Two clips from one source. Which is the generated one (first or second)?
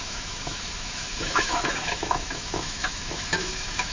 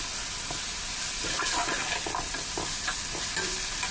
first